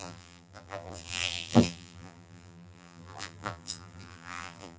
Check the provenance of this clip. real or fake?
fake